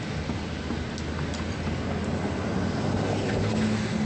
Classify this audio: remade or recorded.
recorded